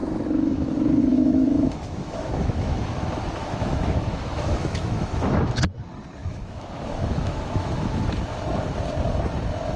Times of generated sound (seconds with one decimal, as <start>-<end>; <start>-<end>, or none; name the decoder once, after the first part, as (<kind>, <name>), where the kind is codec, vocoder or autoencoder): 0.0-0.7 (autoencoder, DAC-VAE); 1.1-2.8; 3.4-5.6; 6.2-8.0